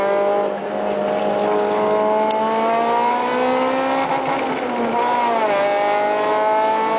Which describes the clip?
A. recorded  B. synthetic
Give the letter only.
A